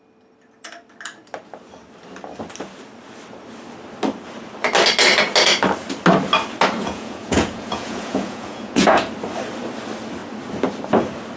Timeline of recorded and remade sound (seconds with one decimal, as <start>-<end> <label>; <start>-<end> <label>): 0.0-6.8 recorded; 6.8-9.1 remade; 9.1-11.4 recorded